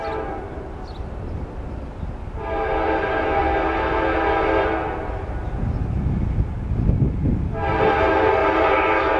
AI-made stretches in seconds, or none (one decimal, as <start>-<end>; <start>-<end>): 8.4-9.2